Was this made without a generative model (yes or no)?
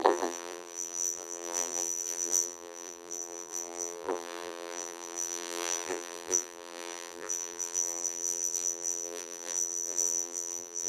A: no